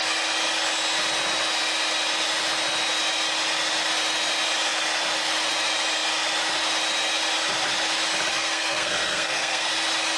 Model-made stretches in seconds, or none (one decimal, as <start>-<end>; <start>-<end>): 8.3-9.7